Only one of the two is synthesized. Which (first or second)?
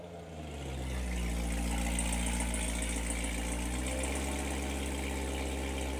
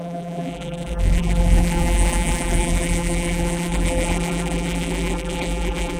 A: second